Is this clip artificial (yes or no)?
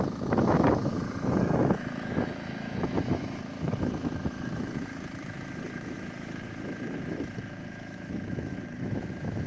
yes